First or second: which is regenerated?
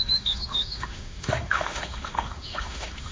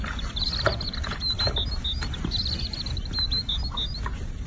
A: first